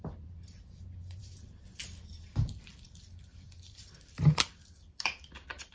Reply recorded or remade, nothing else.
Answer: remade